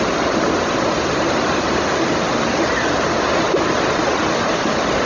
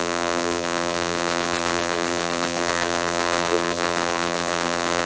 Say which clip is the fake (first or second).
second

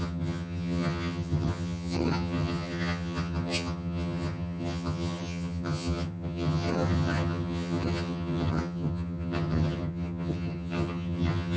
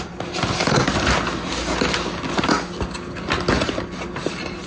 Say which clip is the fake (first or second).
first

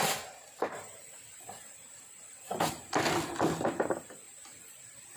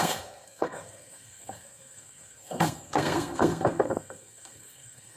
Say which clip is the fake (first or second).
second